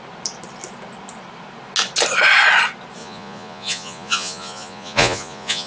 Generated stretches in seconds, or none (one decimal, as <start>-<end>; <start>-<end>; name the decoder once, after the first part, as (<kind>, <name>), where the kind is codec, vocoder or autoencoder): 3.0-5.7 (vocoder, Vocos)